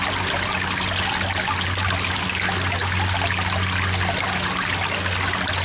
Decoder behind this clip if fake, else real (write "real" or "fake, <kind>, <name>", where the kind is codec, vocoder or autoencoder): real